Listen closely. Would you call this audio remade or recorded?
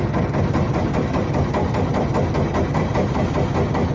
recorded